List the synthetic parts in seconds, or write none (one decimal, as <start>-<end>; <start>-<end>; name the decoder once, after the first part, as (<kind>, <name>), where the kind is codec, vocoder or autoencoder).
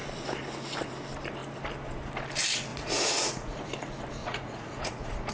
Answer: 2.7-3.7 (vocoder, Vocos); 4.2-5.3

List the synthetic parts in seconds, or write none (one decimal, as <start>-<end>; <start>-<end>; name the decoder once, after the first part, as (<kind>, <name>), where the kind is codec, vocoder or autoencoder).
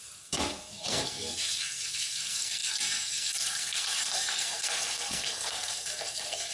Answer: 0.0-6.5 (codec, SNAC)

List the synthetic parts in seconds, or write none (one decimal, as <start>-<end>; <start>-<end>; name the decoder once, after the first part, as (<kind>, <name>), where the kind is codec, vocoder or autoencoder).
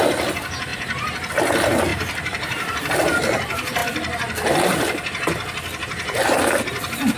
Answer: 1.9-2.9 (vocoder, BigVGAN v2)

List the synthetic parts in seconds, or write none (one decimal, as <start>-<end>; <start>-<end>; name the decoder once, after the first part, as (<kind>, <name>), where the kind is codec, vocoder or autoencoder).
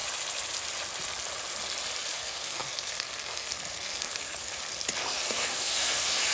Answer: 2.1-4.5 (codec, SNAC); 5.0-6.3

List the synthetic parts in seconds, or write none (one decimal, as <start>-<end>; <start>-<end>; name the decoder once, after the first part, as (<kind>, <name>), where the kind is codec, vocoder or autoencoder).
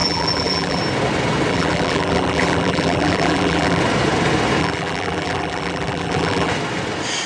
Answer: 0.0-0.8 (vocoder, BigVGAN v2); 1.5-3.8; 4.6-6.5